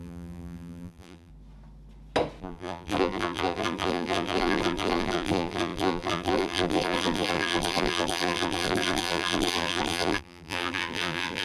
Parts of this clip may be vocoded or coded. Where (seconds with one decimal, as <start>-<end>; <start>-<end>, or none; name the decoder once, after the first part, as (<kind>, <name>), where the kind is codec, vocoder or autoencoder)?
0.0-1.3 (vocoder, BigVGAN v2); 2.4-11.4